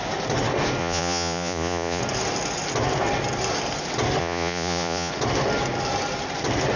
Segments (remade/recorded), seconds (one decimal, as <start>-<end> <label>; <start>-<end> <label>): 0.0-0.8 recorded; 0.8-2.0 remade; 2.0-4.2 recorded; 4.2-5.1 remade; 5.1-6.8 recorded